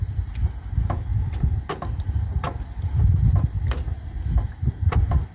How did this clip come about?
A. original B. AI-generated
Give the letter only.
A